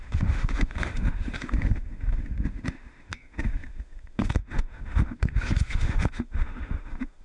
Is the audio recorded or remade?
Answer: remade